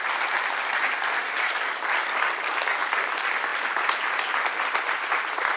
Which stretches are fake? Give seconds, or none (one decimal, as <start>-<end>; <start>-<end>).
1.2-3.1